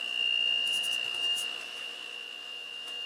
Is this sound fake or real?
fake